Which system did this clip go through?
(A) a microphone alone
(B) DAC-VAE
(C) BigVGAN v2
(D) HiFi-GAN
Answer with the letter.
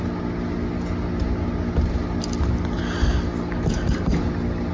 A